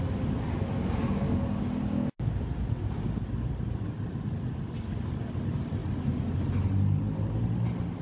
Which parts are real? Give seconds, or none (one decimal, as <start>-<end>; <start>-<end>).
0.0-8.0